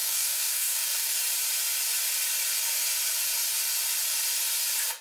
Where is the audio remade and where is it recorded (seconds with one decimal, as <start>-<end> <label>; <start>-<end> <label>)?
0.0-1.2 remade; 1.2-5.0 recorded